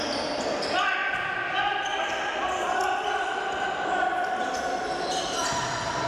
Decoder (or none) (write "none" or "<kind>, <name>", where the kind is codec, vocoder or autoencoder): none